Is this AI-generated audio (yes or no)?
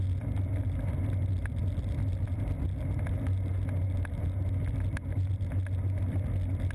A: no